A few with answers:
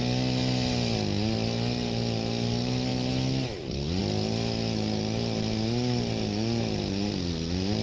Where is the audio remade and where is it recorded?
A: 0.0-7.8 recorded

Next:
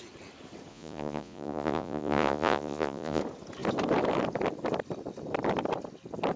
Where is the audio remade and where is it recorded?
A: 0.0-0.7 recorded; 0.7-3.2 remade; 3.2-6.4 recorded

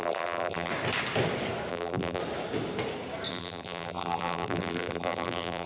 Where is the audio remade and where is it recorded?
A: 0.0-0.7 remade; 0.7-1.7 recorded; 1.7-2.2 remade; 2.2-3.3 recorded; 3.3-5.7 remade

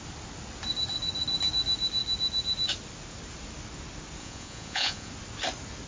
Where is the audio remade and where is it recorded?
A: 0.0-4.2 recorded; 4.2-5.1 remade; 5.1-5.9 recorded

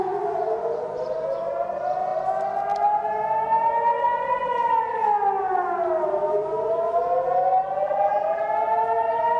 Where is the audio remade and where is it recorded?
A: 0.0-7.8 recorded; 7.8-8.4 remade; 8.4-9.4 recorded

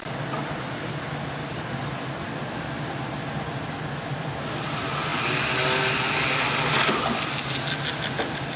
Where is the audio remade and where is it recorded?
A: 0.0-8.6 recorded